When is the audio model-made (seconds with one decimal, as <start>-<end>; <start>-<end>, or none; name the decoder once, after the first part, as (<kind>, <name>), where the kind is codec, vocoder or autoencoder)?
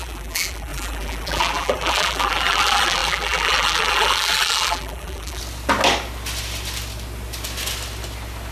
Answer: 0.0-5.4 (vocoder, BigVGAN v2)